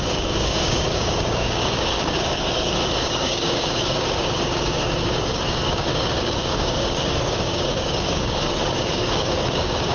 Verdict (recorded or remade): remade